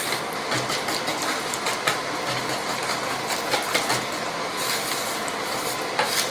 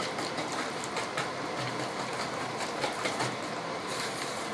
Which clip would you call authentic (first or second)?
first